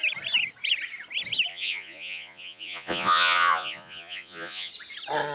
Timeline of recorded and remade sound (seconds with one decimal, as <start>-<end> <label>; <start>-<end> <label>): 0.0-1.5 recorded; 1.5-4.7 remade; 4.7-5.3 recorded